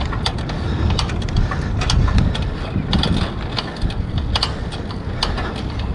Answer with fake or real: real